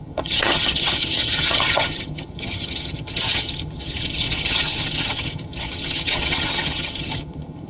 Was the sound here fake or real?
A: fake